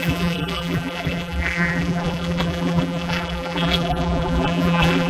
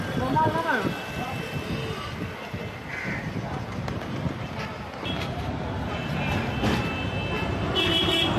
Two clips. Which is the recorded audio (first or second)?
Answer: second